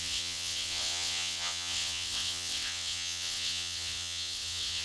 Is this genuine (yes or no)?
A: no